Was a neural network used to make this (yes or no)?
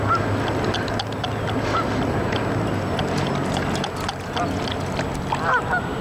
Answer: no